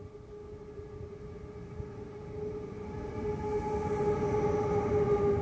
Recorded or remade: recorded